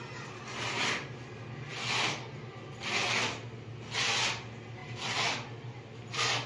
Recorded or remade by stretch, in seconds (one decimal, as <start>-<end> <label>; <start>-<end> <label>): 0.0-6.5 recorded